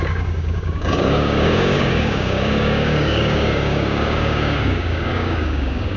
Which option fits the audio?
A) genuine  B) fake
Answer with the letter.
B